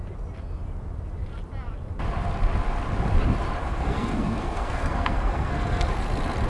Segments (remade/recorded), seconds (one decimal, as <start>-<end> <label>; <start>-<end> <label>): 0.0-3.6 recorded; 3.6-5.9 remade; 5.9-6.5 recorded